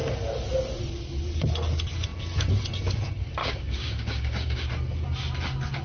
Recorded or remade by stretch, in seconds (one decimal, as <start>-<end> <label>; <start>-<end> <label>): 0.0-3.4 recorded; 3.4-4.7 remade; 4.7-5.8 recorded